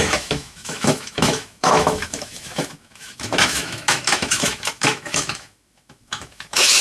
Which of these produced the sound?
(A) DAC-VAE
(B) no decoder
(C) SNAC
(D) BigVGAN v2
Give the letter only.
A